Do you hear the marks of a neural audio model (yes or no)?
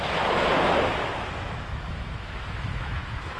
yes